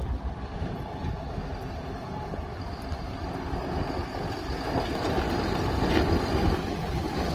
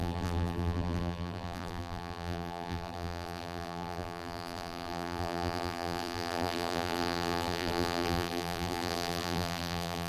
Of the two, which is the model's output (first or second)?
second